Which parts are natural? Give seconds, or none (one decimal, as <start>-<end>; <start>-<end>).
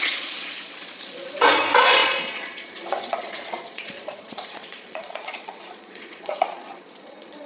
none